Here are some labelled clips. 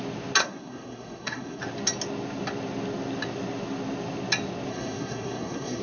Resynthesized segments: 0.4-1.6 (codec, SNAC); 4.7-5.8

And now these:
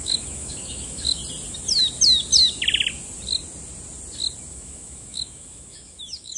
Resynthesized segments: 0.0-1.2 (autoencoder, DAC-VAE); 4.5-6.4

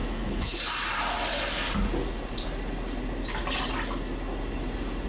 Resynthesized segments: 0.0-0.6 (autoencoder, DAC-VAE)

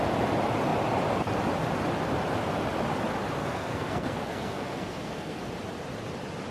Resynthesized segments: 3.4-5.5 (codec, SNAC)

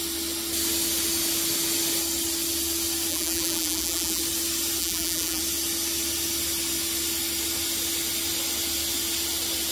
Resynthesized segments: 3.1-4.2 (vocoder, BigVGAN v2); 4.8-5.4

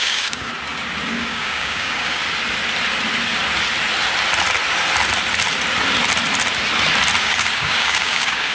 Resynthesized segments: 0.0-0.5 (codec, DAC); 1.1-2.2; 7.2-8.5